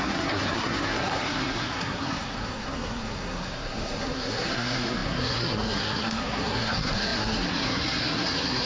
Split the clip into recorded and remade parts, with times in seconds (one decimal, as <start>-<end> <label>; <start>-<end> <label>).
0.0-8.7 remade